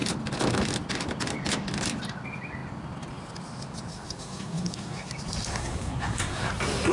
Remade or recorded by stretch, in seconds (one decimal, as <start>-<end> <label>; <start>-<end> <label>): 0.0-3.9 recorded; 3.9-5.1 remade; 5.1-5.5 recorded; 5.5-6.5 remade; 6.5-6.9 recorded